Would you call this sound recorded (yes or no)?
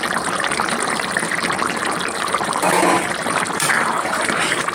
no